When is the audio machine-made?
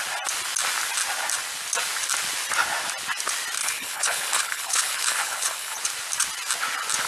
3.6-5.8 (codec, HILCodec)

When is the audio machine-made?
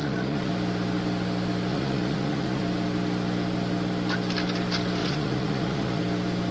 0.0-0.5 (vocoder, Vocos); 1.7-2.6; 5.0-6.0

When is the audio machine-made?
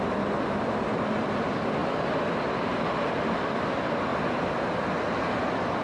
none